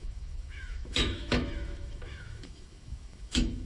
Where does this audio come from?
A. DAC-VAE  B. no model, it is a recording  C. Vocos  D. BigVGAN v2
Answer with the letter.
A